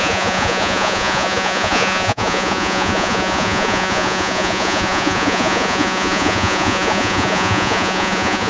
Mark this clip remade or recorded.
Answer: remade